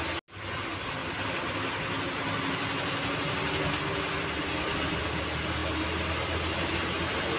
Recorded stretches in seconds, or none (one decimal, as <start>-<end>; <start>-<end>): 0.0-7.4